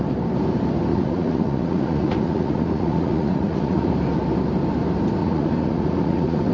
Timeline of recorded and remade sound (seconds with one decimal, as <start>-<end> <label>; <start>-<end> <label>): 0.0-0.9 recorded; 0.9-3.9 remade; 3.9-5.2 recorded; 5.2-6.5 remade